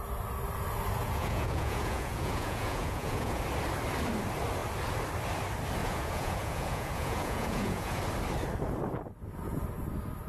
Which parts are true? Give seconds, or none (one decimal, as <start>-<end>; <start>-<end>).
0.0-1.0; 3.4-5.8; 8.0-10.3